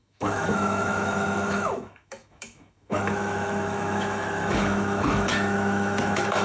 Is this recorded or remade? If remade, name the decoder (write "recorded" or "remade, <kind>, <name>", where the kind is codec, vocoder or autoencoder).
remade, autoencoder, DAC-VAE